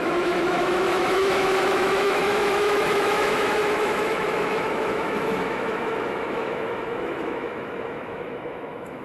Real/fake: fake